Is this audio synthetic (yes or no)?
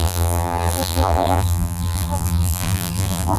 yes